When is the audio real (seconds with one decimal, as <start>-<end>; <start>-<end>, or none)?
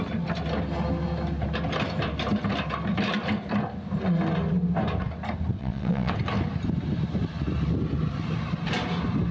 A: 0.0-5.6; 6.1-9.3